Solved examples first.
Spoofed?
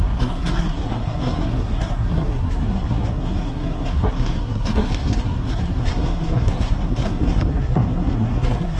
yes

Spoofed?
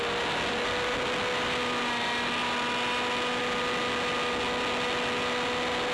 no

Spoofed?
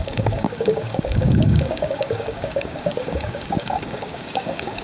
yes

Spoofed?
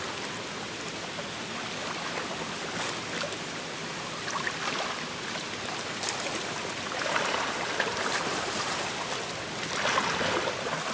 no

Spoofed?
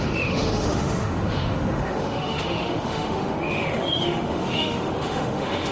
yes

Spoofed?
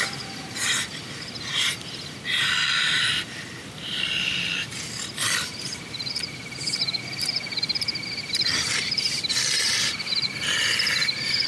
yes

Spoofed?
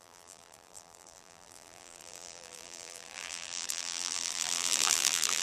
yes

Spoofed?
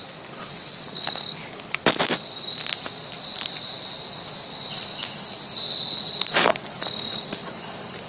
no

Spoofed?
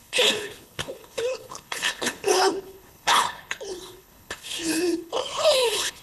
yes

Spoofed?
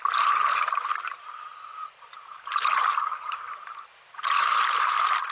no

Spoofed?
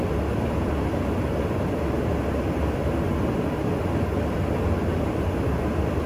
no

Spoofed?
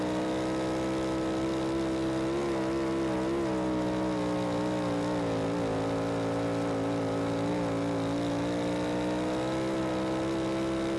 no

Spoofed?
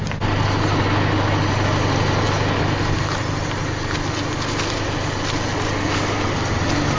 no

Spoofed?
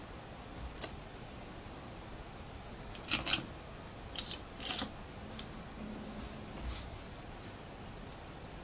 no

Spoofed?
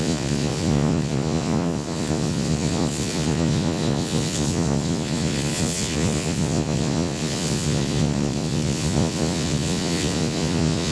yes